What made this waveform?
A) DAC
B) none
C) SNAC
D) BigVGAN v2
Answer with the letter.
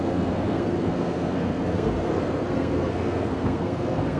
C